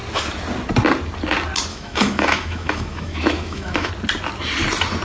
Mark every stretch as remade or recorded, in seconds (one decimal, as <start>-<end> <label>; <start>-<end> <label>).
0.0-1.7 recorded; 1.7-3.9 remade; 3.9-5.0 recorded